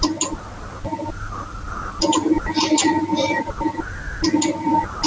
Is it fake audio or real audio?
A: real